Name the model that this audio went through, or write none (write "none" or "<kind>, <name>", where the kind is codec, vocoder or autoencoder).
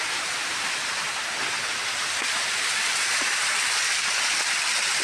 none